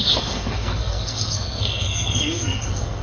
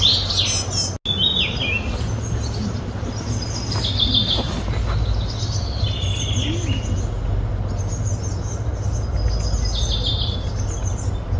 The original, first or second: second